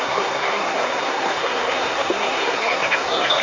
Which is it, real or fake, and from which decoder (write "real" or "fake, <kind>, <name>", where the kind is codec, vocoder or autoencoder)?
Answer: fake, codec, SNAC